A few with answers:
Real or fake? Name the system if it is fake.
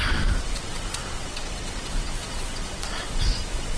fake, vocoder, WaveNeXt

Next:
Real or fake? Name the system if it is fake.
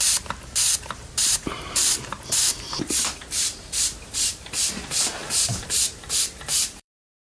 fake, vocoder, BigVGAN v2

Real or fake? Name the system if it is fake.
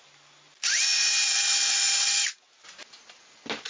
real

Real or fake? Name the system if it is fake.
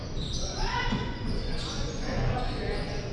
fake, vocoder, Vocos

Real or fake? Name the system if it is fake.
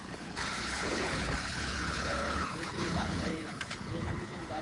fake, codec, HILCodec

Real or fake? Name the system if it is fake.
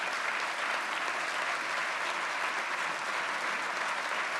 real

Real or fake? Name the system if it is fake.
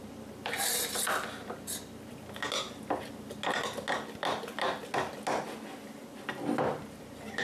real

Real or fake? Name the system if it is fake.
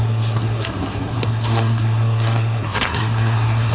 fake, codec, SNAC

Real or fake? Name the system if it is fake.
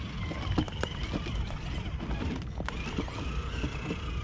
real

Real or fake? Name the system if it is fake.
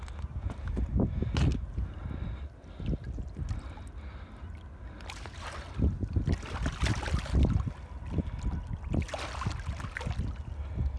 real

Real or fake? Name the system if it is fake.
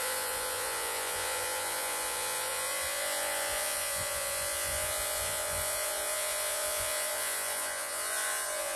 fake, vocoder, Vocos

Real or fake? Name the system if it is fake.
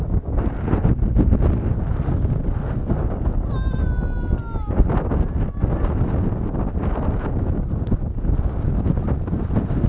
real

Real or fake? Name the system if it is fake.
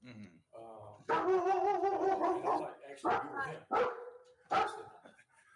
real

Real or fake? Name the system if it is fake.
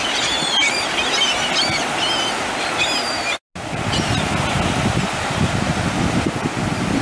real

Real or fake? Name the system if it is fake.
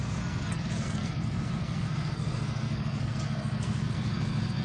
fake, codec, SNAC